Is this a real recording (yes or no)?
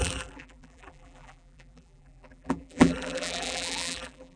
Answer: no